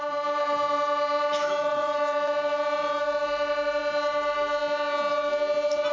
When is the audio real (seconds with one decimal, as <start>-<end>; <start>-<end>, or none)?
3.8-5.9